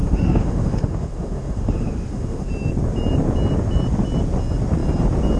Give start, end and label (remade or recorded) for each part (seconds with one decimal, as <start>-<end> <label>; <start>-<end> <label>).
0.0-2.5 remade; 2.5-5.4 recorded